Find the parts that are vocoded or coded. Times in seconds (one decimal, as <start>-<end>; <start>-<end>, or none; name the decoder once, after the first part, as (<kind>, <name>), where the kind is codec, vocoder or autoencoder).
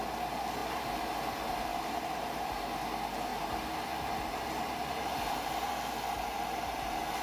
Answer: 0.6-1.2 (vocoder, BigVGAN v2); 1.7-2.7; 3.3-5.7